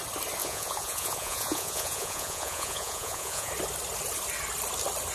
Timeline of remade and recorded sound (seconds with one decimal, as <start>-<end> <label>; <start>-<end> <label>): 0.0-0.4 recorded; 0.4-3.5 remade; 3.5-5.1 recorded